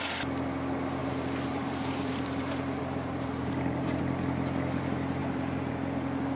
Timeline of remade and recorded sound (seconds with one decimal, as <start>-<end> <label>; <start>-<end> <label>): 0.0-1.0 recorded; 1.0-4.0 remade; 4.0-5.2 recorded; 5.2-5.7 remade; 5.7-6.4 recorded